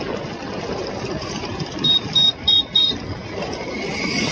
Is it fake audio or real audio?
real